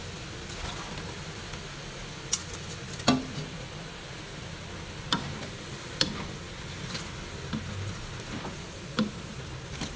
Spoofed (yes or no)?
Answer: no